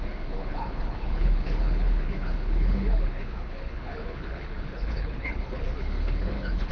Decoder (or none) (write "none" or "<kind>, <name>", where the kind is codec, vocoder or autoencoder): codec, HILCodec